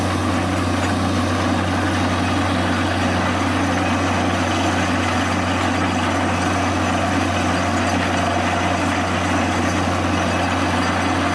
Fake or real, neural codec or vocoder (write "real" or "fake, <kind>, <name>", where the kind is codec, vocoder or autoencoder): real